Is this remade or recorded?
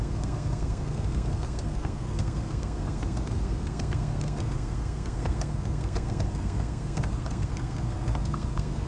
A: remade